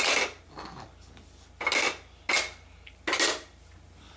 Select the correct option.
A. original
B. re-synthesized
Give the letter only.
A